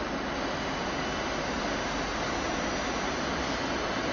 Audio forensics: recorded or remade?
recorded